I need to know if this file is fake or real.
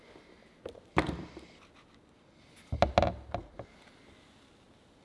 real